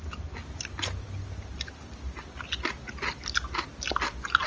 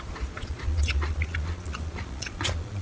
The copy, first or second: second